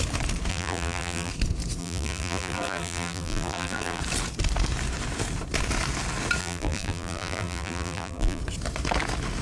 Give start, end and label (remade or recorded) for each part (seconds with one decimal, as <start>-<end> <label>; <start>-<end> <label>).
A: 0.0-0.5 recorded; 0.5-1.3 remade; 1.3-1.8 recorded; 1.8-4.0 remade; 4.0-6.4 recorded; 6.4-8.4 remade; 8.4-9.4 recorded